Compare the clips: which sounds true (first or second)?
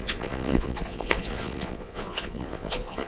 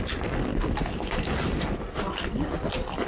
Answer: second